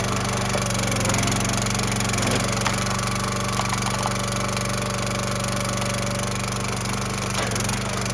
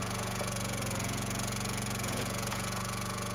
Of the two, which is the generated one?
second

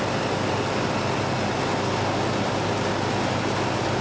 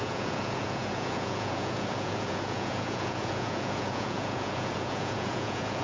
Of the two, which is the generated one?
second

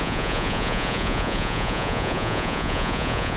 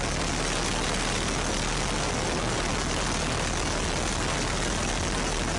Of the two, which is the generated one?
first